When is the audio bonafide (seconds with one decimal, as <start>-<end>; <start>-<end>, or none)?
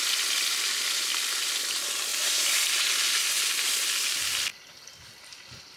0.0-2.1; 3.3-4.5